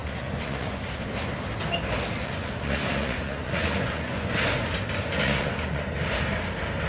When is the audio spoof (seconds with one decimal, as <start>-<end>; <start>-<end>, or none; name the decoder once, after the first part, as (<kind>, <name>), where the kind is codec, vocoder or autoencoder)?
0.0-0.8 (vocoder, Vocos); 2.2-4.3; 5.2-5.9